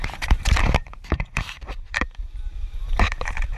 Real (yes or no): no